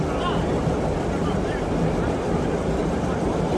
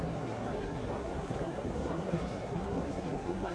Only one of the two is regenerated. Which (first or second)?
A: second